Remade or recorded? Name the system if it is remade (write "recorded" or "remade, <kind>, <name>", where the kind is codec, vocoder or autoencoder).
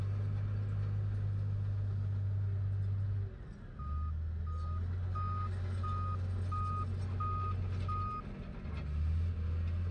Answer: recorded